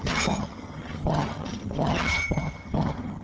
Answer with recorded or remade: remade